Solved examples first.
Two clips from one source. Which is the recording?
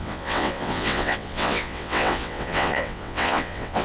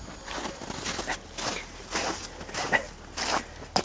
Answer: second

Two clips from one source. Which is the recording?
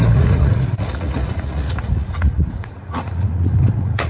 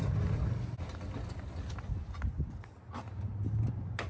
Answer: second